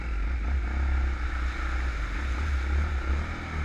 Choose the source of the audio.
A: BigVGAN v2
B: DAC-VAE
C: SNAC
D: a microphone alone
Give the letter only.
D